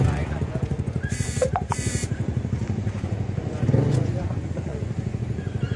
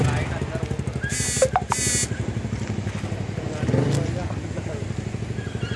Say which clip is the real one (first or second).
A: second